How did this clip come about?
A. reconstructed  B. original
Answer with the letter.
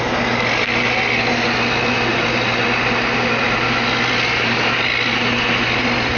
B